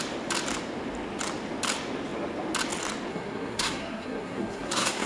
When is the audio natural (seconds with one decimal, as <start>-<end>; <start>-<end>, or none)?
0.0-3.1